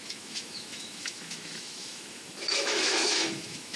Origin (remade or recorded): remade